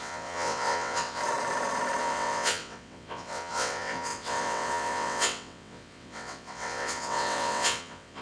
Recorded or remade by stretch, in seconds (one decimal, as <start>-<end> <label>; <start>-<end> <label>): 0.0-1.2 remade; 1.2-2.0 recorded; 2.0-8.2 remade